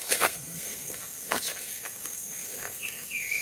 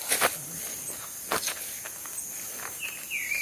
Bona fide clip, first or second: second